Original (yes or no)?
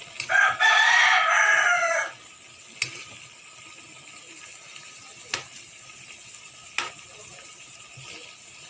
yes